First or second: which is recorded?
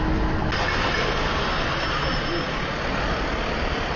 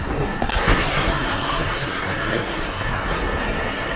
first